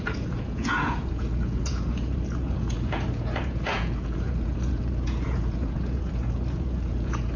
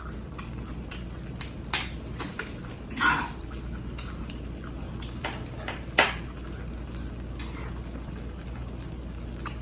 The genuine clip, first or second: second